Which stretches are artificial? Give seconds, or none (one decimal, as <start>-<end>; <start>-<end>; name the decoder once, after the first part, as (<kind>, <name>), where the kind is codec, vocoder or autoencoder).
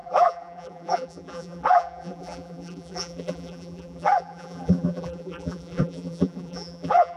0.0-7.2 (vocoder, BigVGAN v2)